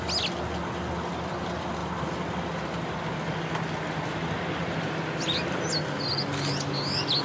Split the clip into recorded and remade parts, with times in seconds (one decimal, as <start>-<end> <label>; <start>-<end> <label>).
0.0-7.2 recorded

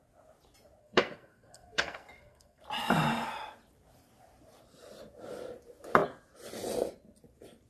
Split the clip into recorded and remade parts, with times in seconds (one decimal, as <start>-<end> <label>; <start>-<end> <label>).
0.0-0.8 recorded; 0.8-2.6 remade; 2.6-7.7 recorded

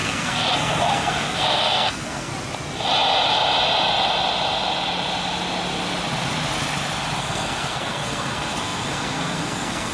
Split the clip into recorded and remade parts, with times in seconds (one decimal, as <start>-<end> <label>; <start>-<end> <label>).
0.0-2.3 remade; 2.3-7.2 recorded; 7.2-9.9 remade

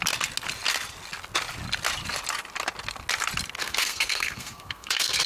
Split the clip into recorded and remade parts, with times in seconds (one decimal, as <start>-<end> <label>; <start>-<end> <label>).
0.0-3.6 recorded; 3.6-5.3 remade

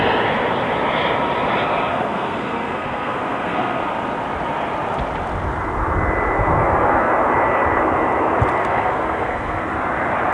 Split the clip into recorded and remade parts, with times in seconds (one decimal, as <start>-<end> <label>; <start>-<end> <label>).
0.0-1.9 recorded; 1.9-3.8 remade; 3.8-6.6 recorded; 6.6-7.1 remade; 7.1-8.6 recorded; 8.6-9.6 remade; 9.6-10.3 recorded